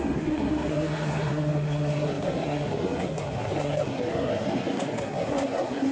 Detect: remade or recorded remade